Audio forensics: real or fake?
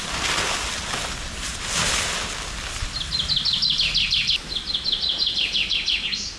real